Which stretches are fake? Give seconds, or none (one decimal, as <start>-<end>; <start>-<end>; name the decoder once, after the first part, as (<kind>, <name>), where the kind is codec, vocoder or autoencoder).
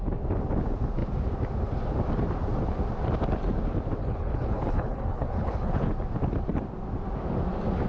4.0-5.9 (codec, HILCodec)